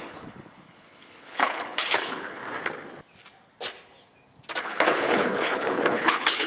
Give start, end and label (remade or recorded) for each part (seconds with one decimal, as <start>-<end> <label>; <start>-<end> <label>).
0.0-2.4 remade; 2.4-4.6 recorded; 4.6-6.5 remade